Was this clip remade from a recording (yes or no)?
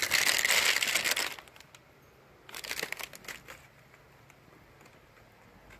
no